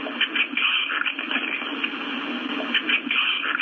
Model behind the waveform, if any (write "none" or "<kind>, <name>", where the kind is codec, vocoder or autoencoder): none